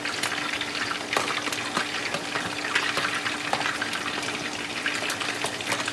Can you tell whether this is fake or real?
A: real